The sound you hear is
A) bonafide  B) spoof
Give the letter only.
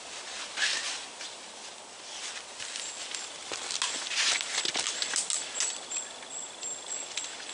A